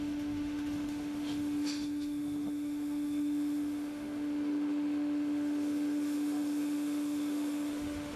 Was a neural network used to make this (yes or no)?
yes